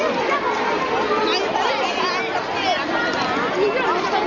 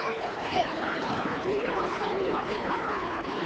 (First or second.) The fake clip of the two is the second